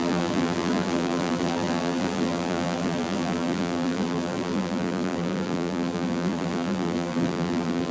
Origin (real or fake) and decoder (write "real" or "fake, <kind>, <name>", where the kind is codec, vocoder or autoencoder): fake, vocoder, BigVGAN v2